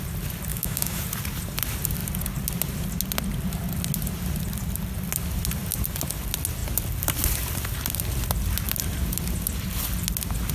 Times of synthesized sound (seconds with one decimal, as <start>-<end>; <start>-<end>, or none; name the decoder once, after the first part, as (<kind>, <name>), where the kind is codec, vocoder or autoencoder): 0.5-1.0 (autoencoder, DAC-VAE)